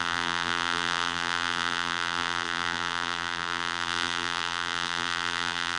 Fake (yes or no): yes